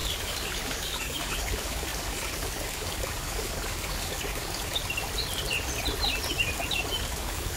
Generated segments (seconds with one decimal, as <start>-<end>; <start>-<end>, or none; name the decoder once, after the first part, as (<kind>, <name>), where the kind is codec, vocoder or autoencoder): 0.0-4.8 (codec, DAC); 6.7-7.6